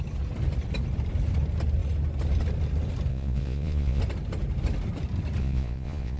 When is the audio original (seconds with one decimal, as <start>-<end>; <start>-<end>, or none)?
0.0-3.1; 4.0-5.4